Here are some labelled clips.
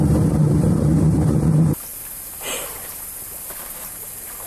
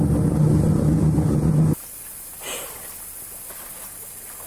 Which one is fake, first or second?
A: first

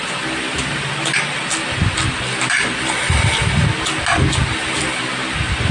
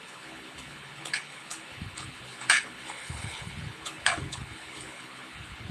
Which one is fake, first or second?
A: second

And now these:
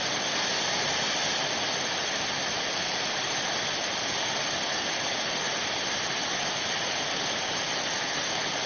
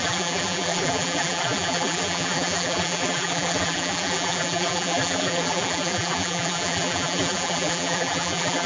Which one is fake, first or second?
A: second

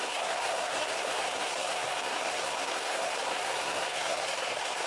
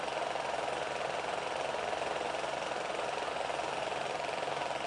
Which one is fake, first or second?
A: first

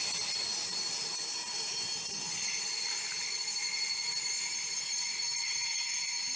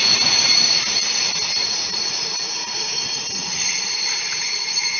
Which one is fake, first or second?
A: second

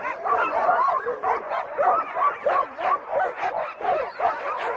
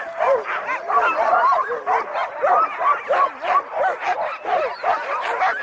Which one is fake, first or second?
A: first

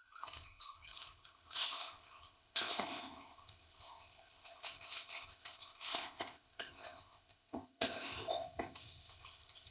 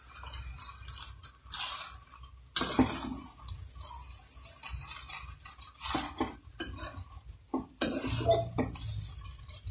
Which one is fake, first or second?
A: first